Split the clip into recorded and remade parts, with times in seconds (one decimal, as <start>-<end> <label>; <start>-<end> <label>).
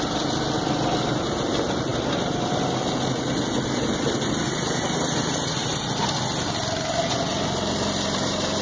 0.0-8.6 recorded